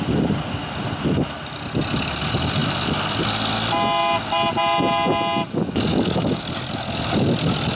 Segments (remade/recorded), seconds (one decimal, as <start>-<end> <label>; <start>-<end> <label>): 0.0-5.9 recorded; 5.9-6.4 remade; 6.4-7.8 recorded